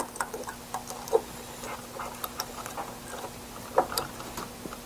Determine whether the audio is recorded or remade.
recorded